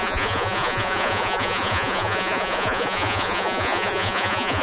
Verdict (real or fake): fake